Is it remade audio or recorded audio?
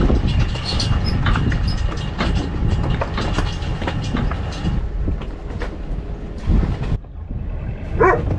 recorded